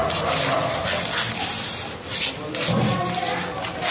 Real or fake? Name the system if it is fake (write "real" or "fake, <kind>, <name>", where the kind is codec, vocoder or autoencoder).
real